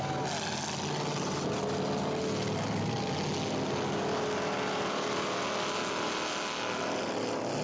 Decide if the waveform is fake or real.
real